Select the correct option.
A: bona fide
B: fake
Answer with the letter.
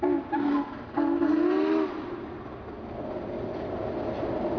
A